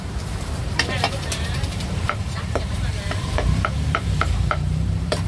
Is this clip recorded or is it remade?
remade